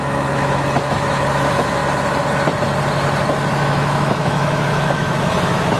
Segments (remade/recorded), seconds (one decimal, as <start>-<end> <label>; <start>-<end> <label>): 0.0-1.8 remade; 1.8-3.5 recorded; 3.5-5.8 remade